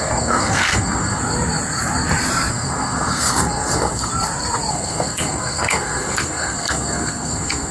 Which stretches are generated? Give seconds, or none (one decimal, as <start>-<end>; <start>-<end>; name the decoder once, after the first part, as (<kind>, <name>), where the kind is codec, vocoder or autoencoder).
0.0-1.2 (codec, SNAC); 2.5-4.1; 4.7-7.7